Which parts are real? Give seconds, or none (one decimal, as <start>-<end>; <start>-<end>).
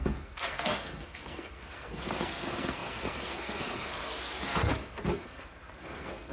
none